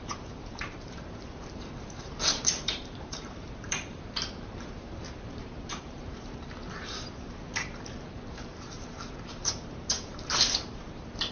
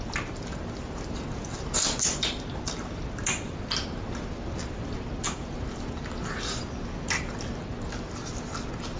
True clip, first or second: second